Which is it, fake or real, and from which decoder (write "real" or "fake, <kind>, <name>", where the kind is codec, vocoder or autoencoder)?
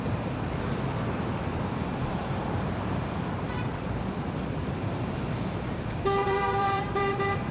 fake, vocoder, BigVGAN v2